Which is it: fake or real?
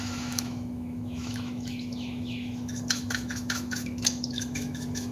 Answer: fake